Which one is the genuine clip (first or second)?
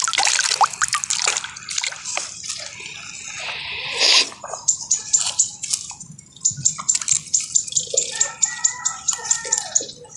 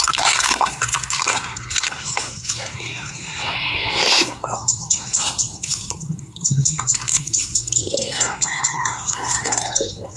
first